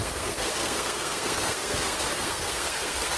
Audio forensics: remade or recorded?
remade